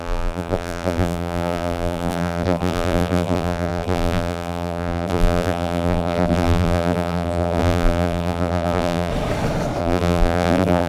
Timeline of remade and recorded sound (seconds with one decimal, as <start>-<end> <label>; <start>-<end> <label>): 0.0-9.1 remade; 9.1-9.8 recorded; 9.8-10.9 remade